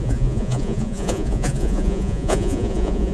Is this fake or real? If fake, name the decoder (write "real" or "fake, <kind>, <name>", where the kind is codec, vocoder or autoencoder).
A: fake, vocoder, Vocos